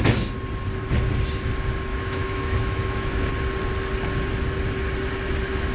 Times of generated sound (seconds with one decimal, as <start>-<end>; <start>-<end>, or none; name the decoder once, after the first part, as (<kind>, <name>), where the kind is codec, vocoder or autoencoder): 1.9-3.3 (autoencoder, DAC-VAE)